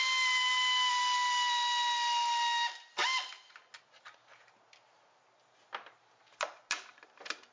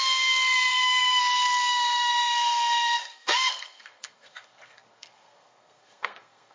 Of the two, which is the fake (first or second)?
second